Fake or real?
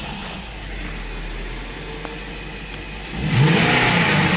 real